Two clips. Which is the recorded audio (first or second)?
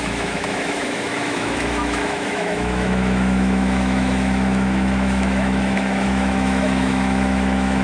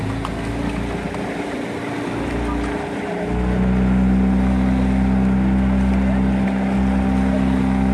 second